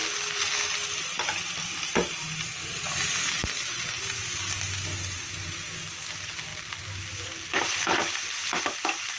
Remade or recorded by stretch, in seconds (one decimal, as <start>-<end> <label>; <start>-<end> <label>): 0.0-9.2 recorded